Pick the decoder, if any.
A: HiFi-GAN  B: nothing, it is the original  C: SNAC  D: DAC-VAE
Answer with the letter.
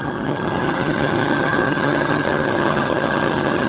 A